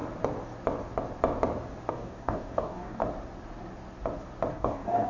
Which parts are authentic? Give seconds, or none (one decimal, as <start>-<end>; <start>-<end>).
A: 0.0-1.9; 3.0-4.5